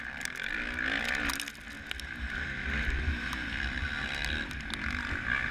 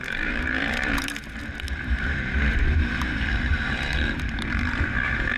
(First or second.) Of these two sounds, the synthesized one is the second